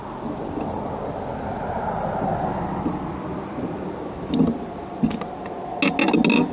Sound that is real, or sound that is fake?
real